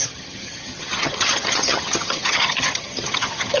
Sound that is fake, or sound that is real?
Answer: fake